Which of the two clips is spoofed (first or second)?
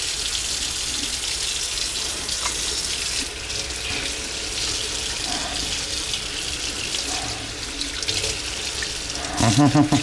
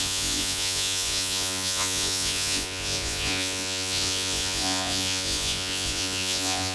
second